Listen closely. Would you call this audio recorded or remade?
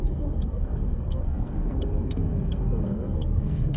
remade